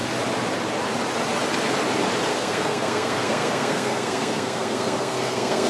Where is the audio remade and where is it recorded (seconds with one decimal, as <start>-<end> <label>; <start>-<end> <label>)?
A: 0.0-2.3 recorded; 2.3-5.7 remade